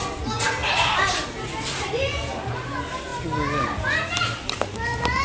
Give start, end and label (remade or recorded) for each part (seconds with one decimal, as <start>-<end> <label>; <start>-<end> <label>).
0.0-5.2 recorded